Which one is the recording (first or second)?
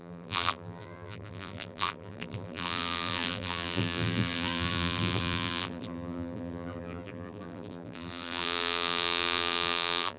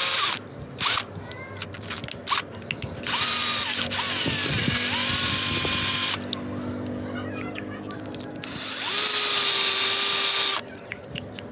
second